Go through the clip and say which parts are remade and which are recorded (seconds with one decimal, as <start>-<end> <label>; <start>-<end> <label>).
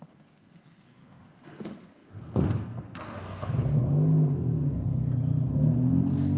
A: 0.0-6.4 remade